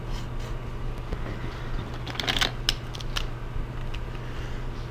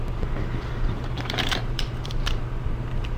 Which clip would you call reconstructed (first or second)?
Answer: second